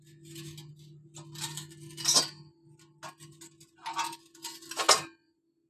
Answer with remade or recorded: recorded